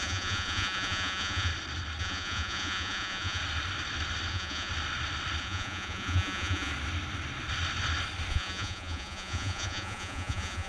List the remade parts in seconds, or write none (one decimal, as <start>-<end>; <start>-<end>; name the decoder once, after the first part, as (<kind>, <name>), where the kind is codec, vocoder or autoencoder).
0.0-1.5 (vocoder, Vocos); 2.0-3.4; 4.3-4.7; 5.4-6.7; 8.3-10.7